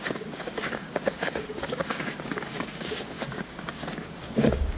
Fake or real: fake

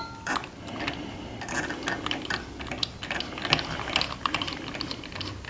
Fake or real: real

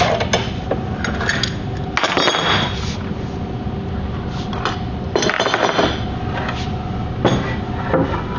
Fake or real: real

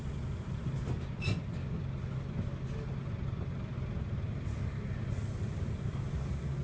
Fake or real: real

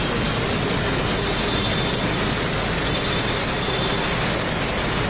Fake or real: real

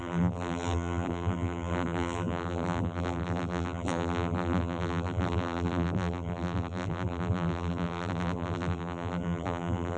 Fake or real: fake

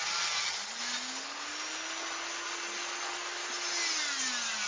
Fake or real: real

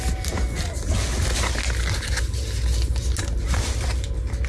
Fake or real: real